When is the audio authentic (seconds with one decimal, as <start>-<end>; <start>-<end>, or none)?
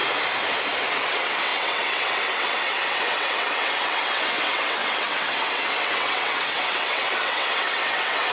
0.0-0.8